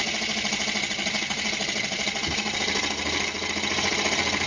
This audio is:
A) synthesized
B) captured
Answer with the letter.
B